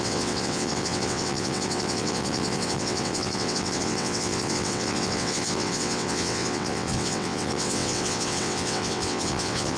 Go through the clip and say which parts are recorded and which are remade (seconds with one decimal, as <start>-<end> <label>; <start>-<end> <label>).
0.0-9.8 remade